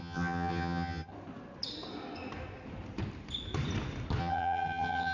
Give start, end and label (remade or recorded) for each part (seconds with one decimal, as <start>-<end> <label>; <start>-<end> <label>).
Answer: 0.0-1.1 remade; 1.1-4.2 recorded; 4.2-5.1 remade